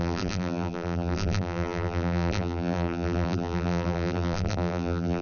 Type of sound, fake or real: fake